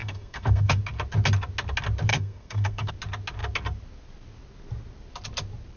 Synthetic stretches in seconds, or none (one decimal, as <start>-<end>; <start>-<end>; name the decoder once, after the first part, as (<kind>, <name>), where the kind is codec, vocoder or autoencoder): 0.0-0.8 (codec, SNAC); 2.1-2.9